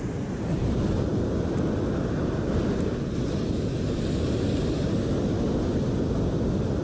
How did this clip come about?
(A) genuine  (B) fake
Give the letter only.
A